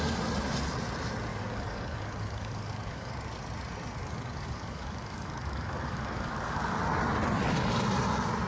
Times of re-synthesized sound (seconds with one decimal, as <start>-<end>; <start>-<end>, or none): 1.3-3.1; 4.0-6.7